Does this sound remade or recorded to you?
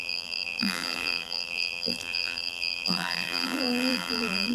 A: remade